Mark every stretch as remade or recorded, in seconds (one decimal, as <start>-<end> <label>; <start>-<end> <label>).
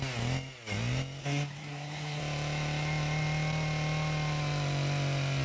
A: 0.0-1.2 recorded; 1.2-2.2 remade; 2.2-5.4 recorded